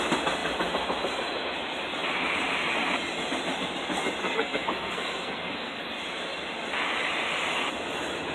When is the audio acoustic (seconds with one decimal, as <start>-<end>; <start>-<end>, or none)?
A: 0.0-4.2; 5.8-8.3